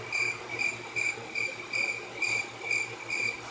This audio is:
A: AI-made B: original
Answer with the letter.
B